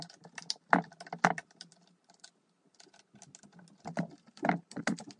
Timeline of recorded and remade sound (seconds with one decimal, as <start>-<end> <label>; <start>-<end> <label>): 0.0-5.2 recorded